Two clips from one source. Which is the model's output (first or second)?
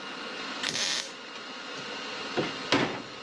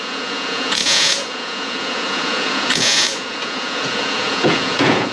second